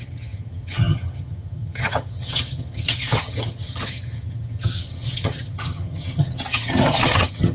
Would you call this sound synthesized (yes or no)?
yes